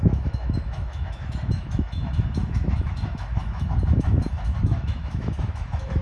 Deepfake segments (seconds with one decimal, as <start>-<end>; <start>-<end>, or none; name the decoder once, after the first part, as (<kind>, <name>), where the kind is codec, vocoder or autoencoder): 0.0-6.0 (autoencoder, DAC-VAE)